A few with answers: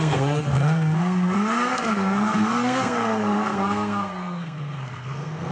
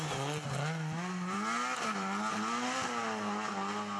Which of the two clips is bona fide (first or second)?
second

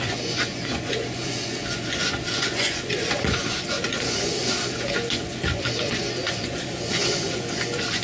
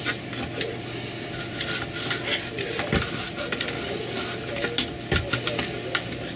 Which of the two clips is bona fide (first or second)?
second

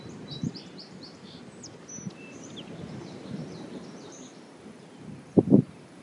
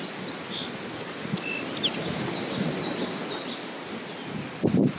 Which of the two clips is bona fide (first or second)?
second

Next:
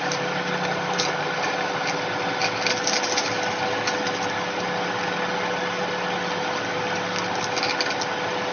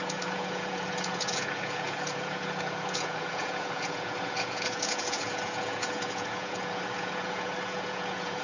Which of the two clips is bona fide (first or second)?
first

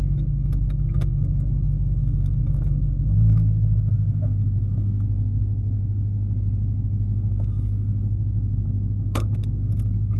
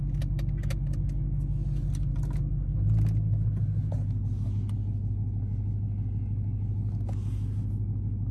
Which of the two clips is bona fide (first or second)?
second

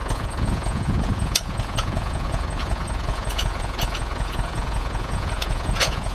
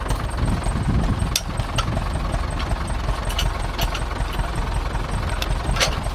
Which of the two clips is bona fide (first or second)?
second